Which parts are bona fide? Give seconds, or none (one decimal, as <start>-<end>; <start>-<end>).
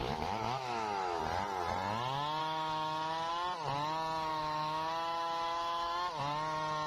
1.2-2.4; 3.3-4.3; 6.2-6.9